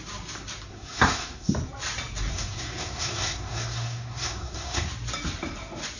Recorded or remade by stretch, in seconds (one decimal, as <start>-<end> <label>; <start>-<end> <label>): 0.0-0.7 recorded; 0.7-1.5 remade; 1.5-2.3 recorded; 2.3-4.9 remade; 4.9-6.0 recorded